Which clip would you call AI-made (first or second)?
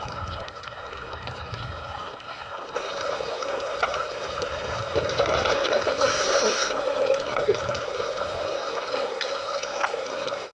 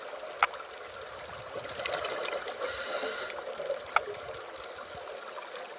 first